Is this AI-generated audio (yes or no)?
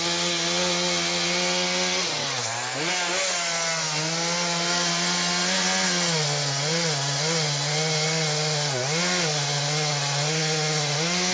no